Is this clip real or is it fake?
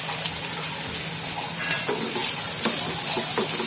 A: real